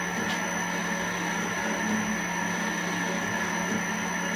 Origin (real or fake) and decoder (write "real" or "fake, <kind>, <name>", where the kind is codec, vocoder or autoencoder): real